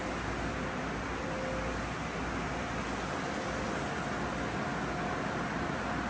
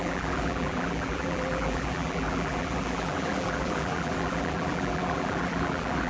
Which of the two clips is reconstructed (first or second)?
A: second